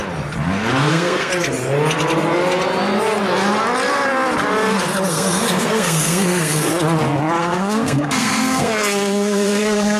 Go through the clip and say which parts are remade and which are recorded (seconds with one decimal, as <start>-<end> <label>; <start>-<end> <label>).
0.0-0.9 recorded; 0.9-1.3 remade; 1.3-5.1 recorded; 5.1-6.7 remade; 6.7-7.4 recorded; 7.4-10.0 remade